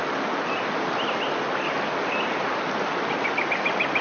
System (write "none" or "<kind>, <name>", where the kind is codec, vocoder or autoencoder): none